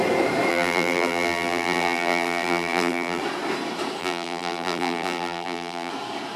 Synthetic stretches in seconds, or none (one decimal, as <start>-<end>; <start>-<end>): 0.5-3.2; 4.0-5.9